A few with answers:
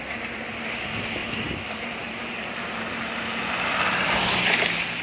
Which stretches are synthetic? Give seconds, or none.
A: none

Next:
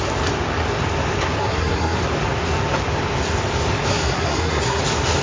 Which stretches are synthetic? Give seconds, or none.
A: 1.4-2.0; 3.9-4.8

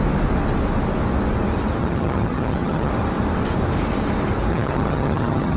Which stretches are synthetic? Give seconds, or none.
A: 1.8-2.9; 4.5-5.6

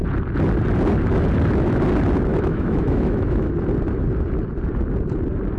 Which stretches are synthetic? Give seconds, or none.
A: 2.3-3.5

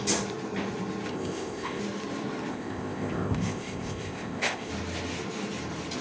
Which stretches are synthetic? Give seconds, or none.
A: 1.1-1.8; 2.5-4.7

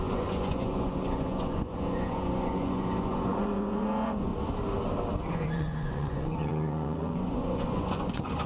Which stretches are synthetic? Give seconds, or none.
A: 0.0-4.3; 5.3-8.5

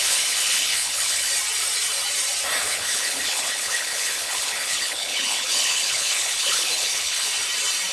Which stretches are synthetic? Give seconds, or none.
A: 0.0-1.3; 2.6-7.3